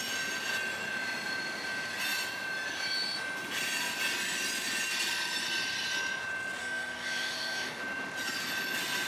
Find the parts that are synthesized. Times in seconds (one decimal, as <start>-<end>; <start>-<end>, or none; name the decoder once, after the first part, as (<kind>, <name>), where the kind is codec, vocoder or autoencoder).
6.6-7.8 (autoencoder, DAC-VAE)